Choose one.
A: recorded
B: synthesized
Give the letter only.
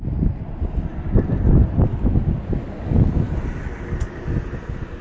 A